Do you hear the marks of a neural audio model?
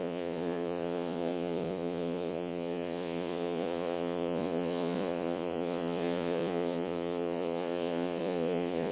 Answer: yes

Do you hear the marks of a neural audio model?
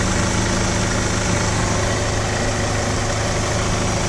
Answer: no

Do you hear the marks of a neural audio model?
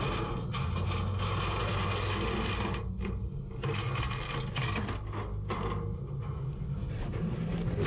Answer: no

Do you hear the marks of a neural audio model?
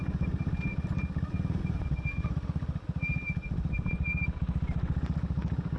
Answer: no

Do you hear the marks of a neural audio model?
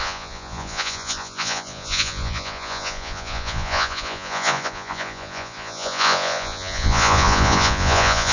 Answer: yes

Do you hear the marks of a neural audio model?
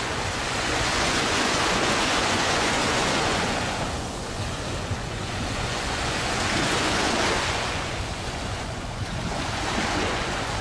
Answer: yes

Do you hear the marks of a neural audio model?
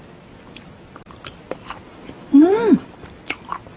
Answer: no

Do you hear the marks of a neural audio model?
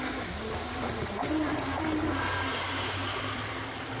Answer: no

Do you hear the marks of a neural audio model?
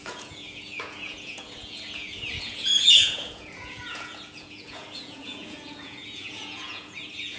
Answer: yes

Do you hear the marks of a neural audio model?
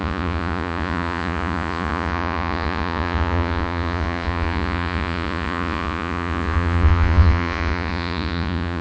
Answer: yes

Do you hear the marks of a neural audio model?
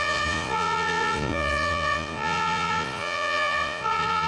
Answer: yes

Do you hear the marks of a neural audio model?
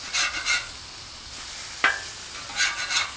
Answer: no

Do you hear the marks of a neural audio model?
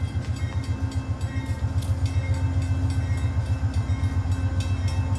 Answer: no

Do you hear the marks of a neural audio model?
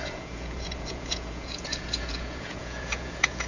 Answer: yes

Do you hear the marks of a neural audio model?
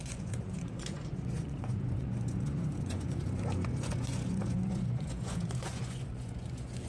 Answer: yes